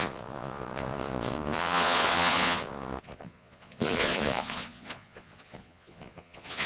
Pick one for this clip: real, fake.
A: fake